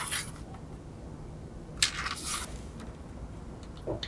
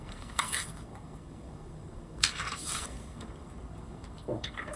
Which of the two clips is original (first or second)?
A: first